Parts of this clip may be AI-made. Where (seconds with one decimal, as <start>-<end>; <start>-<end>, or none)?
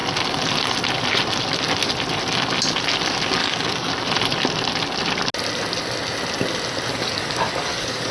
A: 3.4-3.9; 6.9-8.1